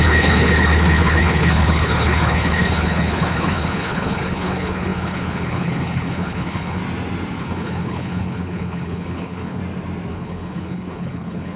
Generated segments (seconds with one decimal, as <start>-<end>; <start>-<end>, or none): 0.0-6.8; 7.4-9.6; 10.1-11.6